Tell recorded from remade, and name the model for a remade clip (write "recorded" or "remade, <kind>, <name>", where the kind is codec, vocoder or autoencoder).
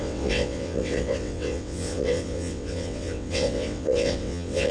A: remade, vocoder, WaveNeXt